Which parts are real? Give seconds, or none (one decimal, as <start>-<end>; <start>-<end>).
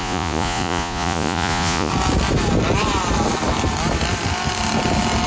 1.9-5.3